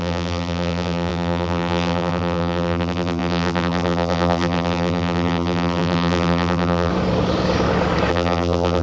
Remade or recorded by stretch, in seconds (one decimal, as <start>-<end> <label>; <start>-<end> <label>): 0.0-6.9 remade; 6.9-8.1 recorded; 8.1-8.8 remade